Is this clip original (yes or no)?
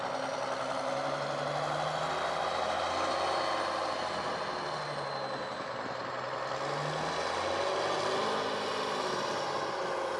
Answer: yes